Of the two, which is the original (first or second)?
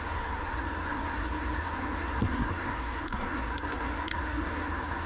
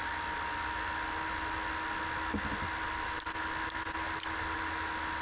second